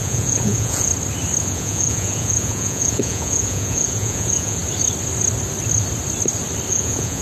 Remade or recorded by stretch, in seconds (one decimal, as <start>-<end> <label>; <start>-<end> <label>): 0.0-0.9 remade; 0.9-1.4 recorded; 1.4-4.6 remade; 4.6-6.7 recorded; 6.7-7.2 remade